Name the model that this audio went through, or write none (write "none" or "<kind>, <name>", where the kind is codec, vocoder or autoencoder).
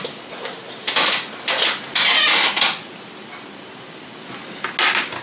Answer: none